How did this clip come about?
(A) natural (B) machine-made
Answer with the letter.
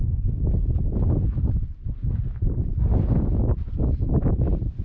A